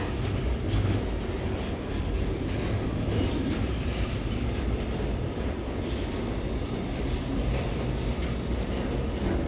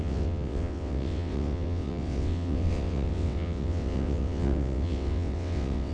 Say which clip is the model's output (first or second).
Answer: second